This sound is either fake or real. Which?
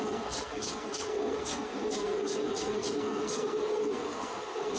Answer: fake